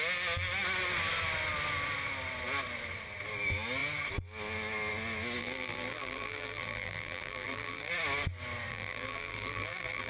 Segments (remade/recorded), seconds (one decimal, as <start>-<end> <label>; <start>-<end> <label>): 0.0-5.4 recorded; 5.4-7.9 remade; 7.9-8.7 recorded; 8.7-10.1 remade